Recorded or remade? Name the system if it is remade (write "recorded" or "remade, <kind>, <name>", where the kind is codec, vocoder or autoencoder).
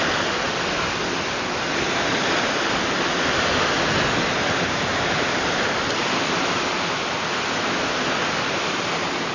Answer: recorded